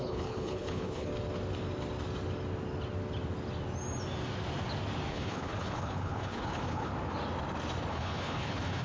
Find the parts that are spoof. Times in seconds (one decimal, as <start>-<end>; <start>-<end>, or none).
0.0-1.1; 5.1-6.9; 7.9-8.8

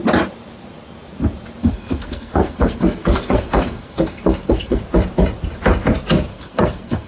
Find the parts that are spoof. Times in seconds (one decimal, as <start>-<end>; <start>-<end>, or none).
1.6-4.8; 6.3-7.1

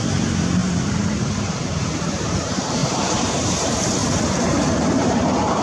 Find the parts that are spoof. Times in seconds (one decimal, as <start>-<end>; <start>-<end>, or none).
0.0-5.6

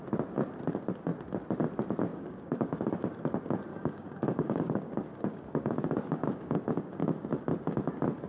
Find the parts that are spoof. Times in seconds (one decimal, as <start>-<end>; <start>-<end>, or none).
2.1-2.9; 3.7-7.9

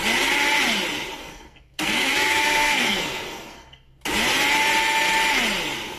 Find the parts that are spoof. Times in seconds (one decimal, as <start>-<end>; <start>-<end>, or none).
1.2-4.0

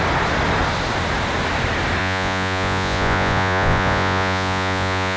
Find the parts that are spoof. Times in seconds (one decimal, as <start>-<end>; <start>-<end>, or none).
2.0-5.2

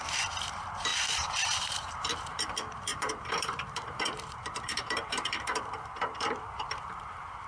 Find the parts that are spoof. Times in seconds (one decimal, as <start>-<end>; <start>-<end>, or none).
0.0-7.5

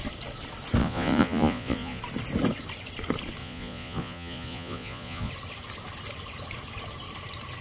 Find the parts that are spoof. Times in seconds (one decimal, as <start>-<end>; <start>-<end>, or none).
0.8-2.0; 3.4-5.3